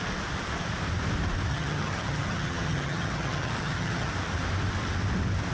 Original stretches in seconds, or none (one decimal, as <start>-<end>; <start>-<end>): 0.0-1.5; 4.1-5.5